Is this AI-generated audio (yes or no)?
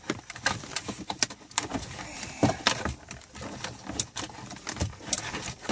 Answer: no